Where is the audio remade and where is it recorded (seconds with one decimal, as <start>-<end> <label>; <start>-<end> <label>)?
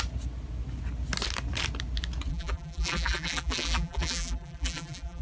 0.0-2.3 recorded; 2.3-5.2 remade